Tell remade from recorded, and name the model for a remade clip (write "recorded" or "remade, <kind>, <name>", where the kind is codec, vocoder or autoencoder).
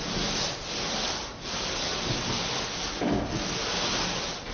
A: recorded